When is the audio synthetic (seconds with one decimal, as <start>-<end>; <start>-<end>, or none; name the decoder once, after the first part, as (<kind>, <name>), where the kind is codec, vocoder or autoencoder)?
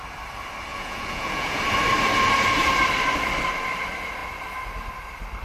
0.7-1.6 (vocoder, Vocos)